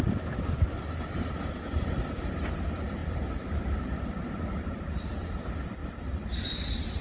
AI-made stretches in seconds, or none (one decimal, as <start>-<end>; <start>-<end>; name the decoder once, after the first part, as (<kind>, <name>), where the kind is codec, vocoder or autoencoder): 3.0-5.1 (vocoder, BigVGAN v2)